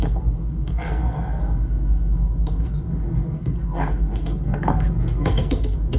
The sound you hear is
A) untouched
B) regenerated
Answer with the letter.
B